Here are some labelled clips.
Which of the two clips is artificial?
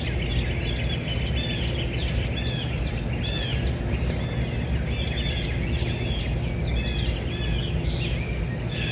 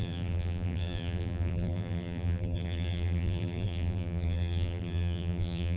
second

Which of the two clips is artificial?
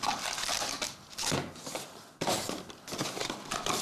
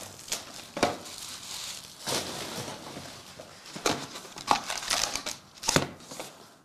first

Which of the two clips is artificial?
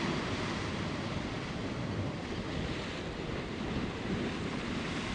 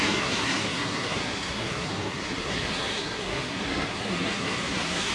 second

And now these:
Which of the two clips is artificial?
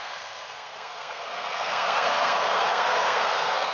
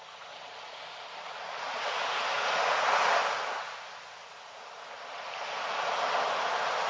first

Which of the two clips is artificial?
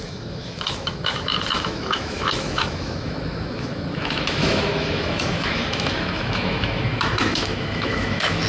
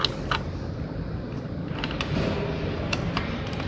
first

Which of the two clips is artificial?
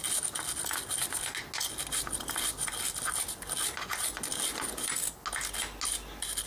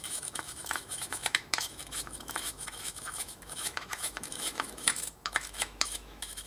second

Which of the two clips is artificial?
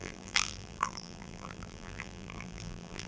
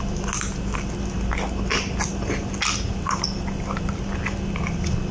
first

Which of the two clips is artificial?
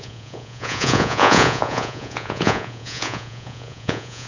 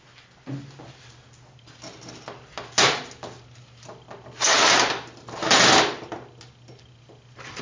first